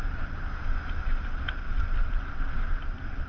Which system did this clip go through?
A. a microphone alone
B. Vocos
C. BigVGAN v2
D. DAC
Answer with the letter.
A